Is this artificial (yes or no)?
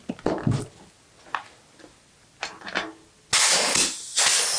no